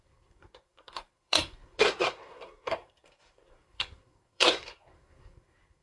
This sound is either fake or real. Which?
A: fake